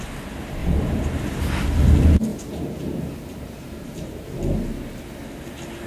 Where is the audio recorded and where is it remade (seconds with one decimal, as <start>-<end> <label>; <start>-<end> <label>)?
0.0-0.6 recorded; 0.6-1.4 remade; 1.4-2.3 recorded; 2.3-4.7 remade; 4.7-5.9 recorded